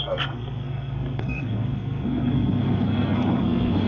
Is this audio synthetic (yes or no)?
yes